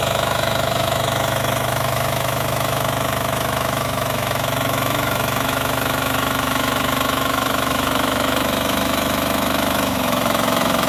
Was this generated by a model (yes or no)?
yes